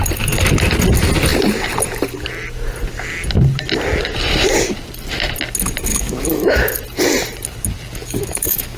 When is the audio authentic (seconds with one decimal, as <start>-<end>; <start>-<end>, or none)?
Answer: 0.0-5.9; 6.7-8.0